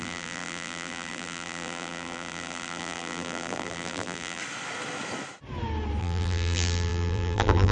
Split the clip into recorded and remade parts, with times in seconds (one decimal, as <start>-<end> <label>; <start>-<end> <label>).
0.0-4.4 remade; 4.4-6.0 recorded; 6.0-7.7 remade

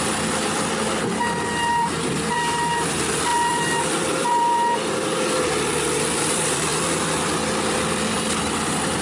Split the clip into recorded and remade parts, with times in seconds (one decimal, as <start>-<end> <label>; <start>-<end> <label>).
0.0-9.0 remade

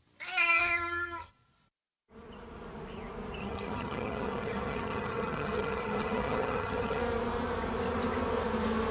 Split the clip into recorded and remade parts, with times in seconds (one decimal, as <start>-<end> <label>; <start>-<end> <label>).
0.0-0.6 recorded; 0.6-1.3 remade; 1.3-3.4 recorded; 3.4-7.0 remade; 7.0-8.9 recorded